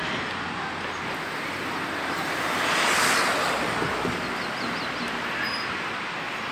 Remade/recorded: recorded